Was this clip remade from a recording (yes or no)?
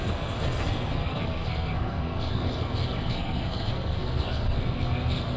yes